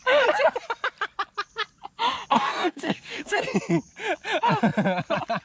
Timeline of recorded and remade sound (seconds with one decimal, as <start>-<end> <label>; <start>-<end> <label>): 0.0-2.3 recorded; 2.3-3.4 remade; 3.4-5.4 recorded